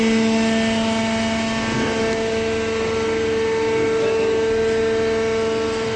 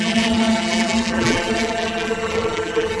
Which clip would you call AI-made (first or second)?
second